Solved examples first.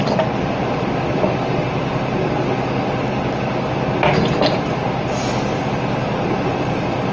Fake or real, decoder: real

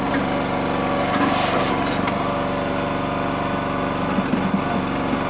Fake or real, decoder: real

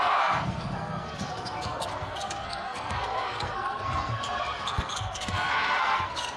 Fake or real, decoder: fake, codec, SNAC